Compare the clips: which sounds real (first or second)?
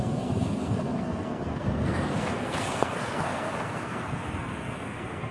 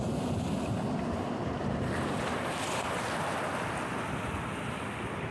second